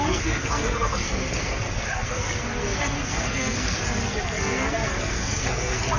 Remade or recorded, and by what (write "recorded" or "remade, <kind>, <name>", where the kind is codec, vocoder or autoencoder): remade, codec, SNAC